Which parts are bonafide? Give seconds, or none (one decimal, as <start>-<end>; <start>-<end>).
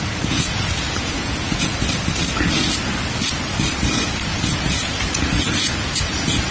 1.7-4.3